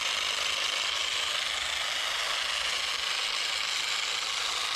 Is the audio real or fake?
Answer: real